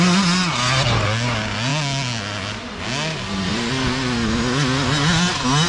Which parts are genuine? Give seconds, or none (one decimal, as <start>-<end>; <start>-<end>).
0.0-5.7